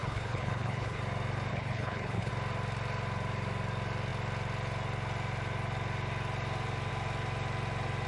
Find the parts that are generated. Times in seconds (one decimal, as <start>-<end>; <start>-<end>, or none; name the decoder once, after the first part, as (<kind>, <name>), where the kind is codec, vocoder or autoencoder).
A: 0.0-1.0 (codec, HILCodec); 1.5-2.3